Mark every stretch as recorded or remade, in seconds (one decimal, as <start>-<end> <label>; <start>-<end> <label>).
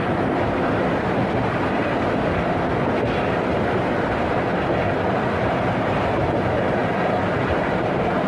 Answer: 0.0-8.3 recorded